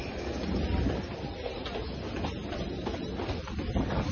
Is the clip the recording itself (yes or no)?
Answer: yes